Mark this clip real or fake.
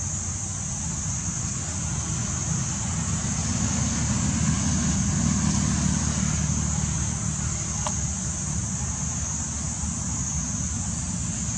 real